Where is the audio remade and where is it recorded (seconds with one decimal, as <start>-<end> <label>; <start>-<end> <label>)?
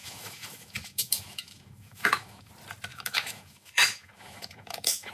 0.0-2.5 remade; 2.5-2.9 recorded; 2.9-5.1 remade